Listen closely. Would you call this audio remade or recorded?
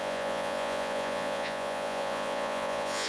remade